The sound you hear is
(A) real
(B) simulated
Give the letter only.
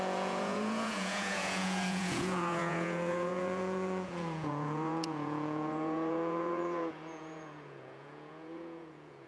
B